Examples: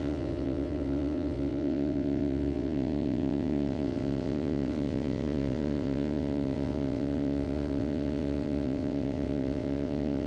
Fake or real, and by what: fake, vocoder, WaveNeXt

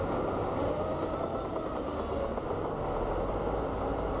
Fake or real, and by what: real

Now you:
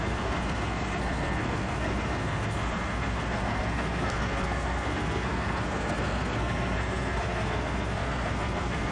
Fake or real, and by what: fake, codec, SNAC